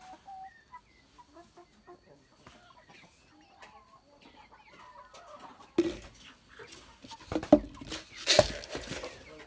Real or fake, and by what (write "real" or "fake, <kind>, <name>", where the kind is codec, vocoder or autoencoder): real